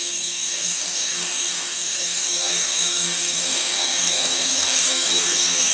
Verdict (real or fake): fake